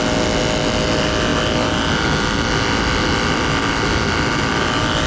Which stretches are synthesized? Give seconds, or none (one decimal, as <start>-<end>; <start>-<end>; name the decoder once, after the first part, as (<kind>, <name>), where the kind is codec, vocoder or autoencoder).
none